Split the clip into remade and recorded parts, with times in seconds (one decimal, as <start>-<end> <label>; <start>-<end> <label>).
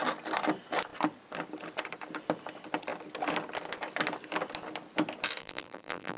0.0-5.4 recorded; 5.4-6.2 remade